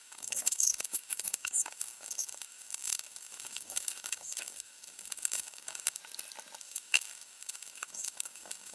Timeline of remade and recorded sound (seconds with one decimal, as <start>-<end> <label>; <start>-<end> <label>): 0.0-6.0 remade; 6.0-6.6 recorded; 6.6-8.7 remade